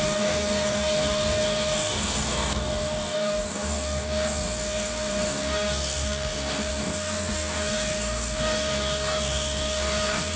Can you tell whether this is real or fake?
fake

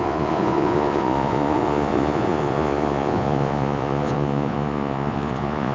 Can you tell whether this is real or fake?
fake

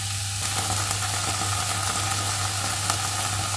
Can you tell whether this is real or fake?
real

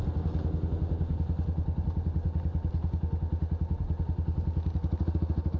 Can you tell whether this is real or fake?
real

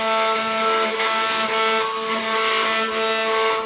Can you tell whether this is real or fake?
real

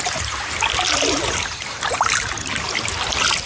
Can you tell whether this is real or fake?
real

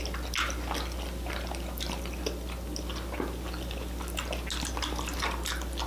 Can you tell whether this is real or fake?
real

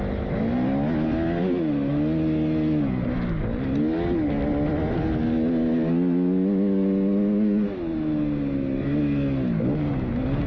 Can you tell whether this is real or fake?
real